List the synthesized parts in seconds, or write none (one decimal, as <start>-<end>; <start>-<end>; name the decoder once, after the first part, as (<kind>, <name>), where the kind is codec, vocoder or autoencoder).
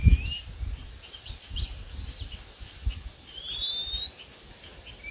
none